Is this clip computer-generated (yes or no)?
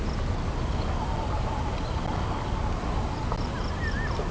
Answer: no